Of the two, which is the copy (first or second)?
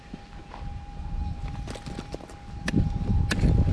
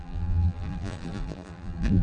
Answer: second